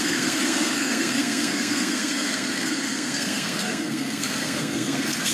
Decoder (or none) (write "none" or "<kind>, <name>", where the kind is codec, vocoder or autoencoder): codec, SNAC